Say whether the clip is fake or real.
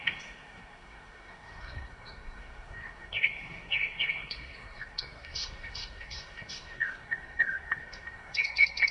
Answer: fake